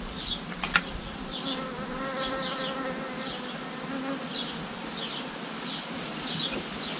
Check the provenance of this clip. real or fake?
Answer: real